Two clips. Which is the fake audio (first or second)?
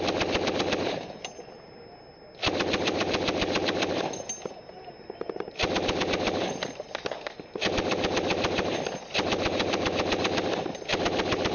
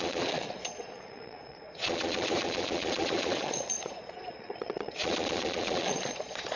second